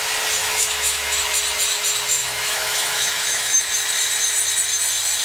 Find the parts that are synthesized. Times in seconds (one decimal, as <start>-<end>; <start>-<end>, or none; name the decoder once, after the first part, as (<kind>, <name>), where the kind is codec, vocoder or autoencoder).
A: 0.4-1.2 (autoencoder, DAC-VAE); 2.2-3.7